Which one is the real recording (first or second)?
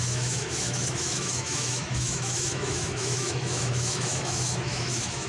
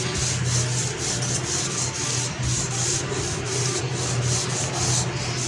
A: second